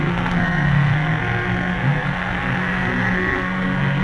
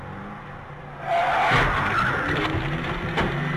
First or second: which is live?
second